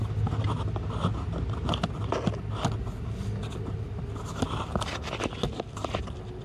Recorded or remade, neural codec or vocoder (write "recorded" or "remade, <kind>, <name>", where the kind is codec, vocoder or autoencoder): recorded